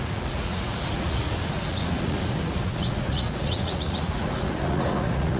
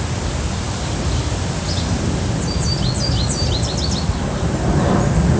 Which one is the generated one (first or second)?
first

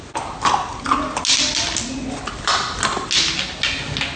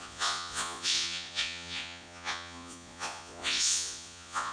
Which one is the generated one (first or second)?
second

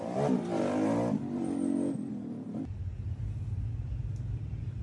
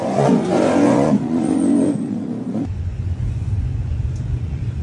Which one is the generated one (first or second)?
second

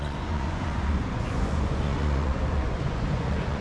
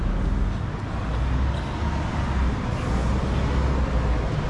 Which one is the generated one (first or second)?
first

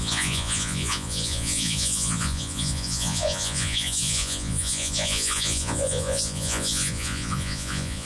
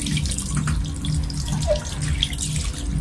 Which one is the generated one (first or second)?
first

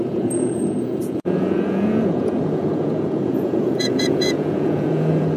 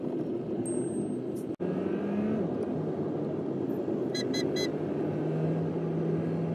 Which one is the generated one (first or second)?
first